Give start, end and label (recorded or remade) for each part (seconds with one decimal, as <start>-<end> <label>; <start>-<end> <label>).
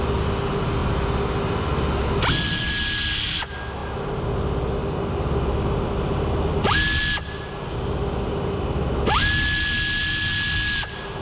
0.0-11.2 recorded